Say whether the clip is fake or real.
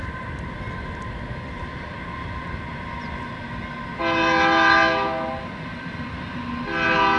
real